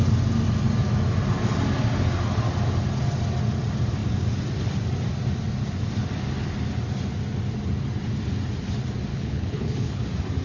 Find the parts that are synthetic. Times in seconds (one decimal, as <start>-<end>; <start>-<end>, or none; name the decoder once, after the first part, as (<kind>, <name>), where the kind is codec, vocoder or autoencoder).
9.1-10.0 (codec, HILCodec)